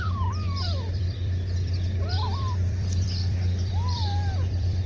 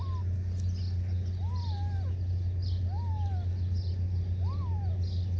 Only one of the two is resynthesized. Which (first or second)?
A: first